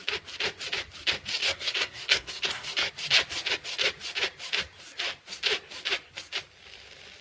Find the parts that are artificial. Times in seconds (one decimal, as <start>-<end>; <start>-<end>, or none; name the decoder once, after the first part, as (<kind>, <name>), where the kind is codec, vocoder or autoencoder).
1.4-2.9 (codec, SNAC)